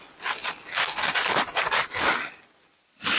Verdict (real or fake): fake